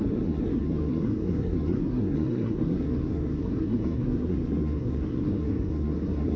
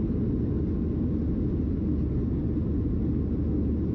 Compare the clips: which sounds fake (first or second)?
first